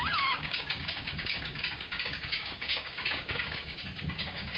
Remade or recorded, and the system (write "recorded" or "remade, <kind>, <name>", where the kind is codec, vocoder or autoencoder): remade, codec, DAC